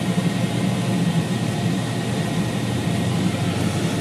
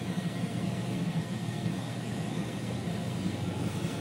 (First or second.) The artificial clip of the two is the second